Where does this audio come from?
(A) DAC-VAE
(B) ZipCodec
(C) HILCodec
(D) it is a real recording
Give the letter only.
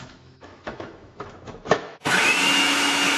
A